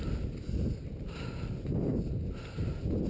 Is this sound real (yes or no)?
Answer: yes